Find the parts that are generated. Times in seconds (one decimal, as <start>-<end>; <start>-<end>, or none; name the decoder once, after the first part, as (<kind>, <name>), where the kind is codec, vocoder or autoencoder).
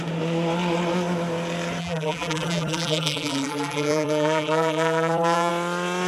1.8-5.5 (vocoder, BigVGAN v2)